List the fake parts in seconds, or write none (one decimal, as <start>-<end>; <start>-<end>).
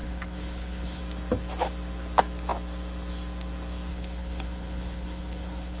0.0-1.0; 3.9-5.8